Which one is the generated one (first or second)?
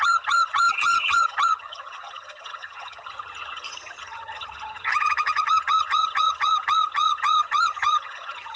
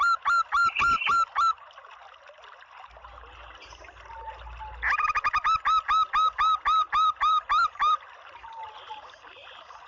first